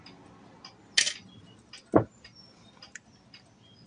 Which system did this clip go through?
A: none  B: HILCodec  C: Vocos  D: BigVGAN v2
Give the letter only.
A